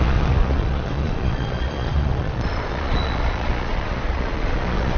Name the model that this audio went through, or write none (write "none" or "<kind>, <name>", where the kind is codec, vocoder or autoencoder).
vocoder, Vocos